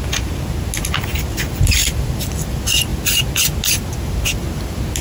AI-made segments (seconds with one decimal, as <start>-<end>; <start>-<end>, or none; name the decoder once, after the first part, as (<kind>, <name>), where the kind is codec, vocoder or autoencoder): none

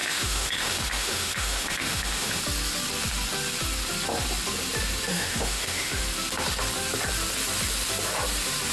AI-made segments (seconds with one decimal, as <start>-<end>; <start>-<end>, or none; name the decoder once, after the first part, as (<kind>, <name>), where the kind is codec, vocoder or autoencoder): 0.0-2.4 (autoencoder, DAC-VAE); 5.1-6.0